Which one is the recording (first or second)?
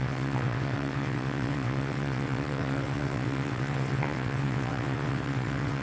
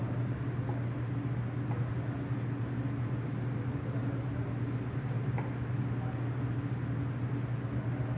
second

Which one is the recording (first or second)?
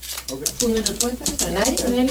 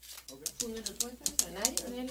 second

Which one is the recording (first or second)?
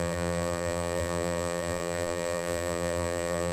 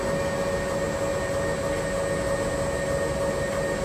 second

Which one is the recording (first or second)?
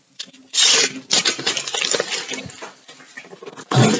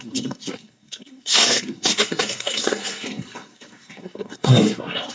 first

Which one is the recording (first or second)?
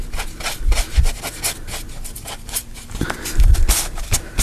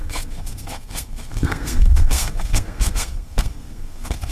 first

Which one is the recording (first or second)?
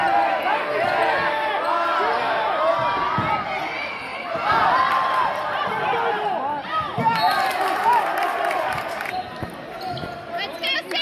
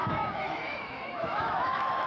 first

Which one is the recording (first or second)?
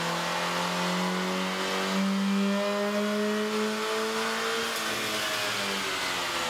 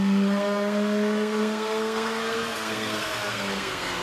first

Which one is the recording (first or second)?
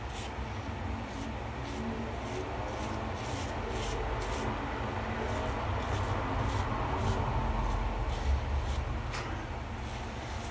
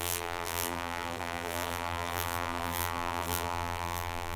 first